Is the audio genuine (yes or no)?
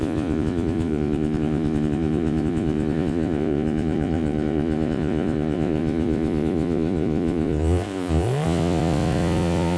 no